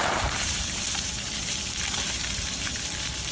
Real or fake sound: fake